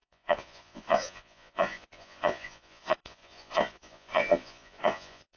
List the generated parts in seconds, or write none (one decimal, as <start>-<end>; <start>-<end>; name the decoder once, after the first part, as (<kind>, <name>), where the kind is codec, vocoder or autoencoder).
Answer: 0.0-5.4 (vocoder, Vocos)